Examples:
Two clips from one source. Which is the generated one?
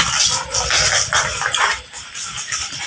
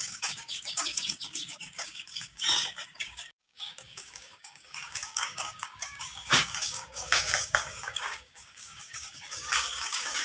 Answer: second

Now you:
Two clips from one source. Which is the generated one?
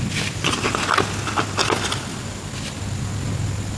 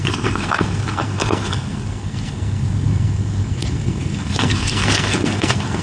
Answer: second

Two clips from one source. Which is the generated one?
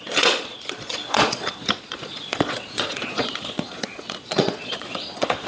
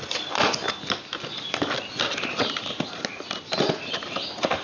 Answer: first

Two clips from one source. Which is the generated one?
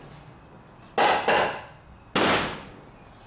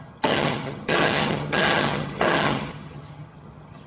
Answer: second